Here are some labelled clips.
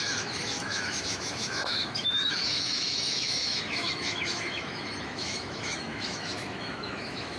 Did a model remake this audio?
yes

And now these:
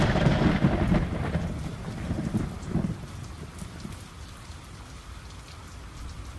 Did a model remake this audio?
no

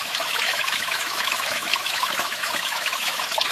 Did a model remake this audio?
yes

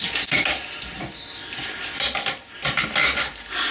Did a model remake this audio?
no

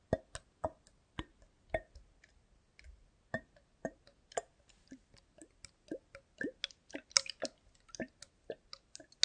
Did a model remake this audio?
no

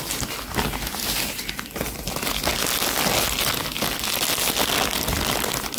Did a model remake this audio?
no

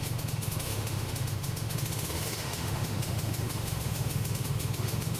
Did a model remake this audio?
yes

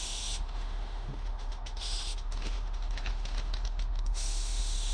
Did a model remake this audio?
yes